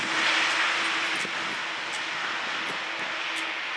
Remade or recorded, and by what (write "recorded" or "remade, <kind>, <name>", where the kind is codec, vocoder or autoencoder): recorded